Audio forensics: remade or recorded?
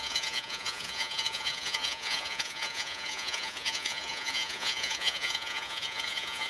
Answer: remade